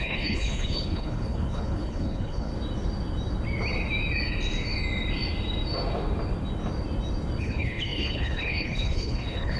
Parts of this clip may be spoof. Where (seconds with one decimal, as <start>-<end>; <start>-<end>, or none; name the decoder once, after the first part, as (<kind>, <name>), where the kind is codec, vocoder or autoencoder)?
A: 0.0-2.5 (codec, HILCodec); 7.4-9.6